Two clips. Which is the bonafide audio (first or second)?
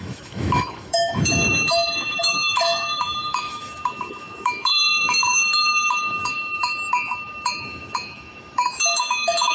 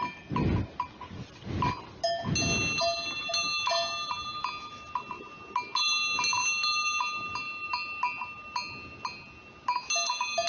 second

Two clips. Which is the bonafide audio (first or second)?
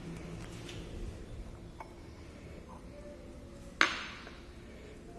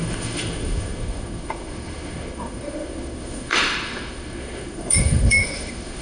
first